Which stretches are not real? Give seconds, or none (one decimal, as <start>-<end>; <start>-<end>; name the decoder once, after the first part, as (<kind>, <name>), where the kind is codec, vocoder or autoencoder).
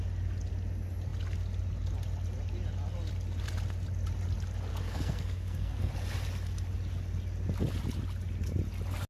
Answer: 4.7-5.9 (codec, SNAC)